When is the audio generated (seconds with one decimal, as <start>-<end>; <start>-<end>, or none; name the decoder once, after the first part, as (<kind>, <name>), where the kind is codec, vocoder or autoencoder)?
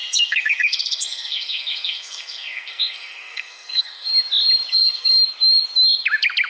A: 0.0-4.1 (codec, SNAC); 4.7-5.2